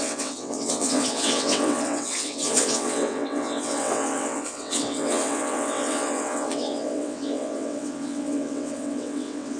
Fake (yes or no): yes